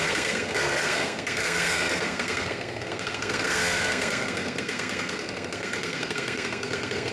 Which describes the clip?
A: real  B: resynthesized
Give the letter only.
B